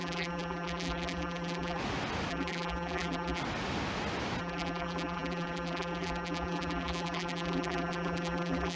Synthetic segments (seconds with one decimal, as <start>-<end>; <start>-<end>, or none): 0.0-1.8; 2.3-3.4; 4.4-8.8